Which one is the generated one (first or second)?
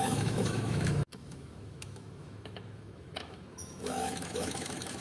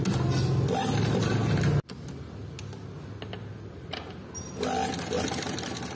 first